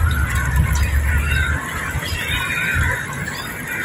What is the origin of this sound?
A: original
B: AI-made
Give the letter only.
A